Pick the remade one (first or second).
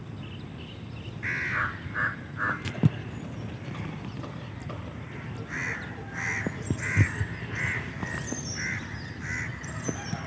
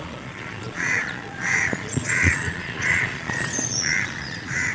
second